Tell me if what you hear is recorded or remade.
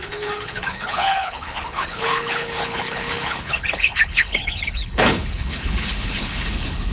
remade